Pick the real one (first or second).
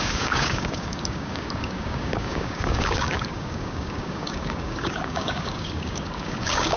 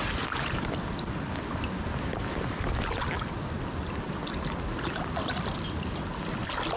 second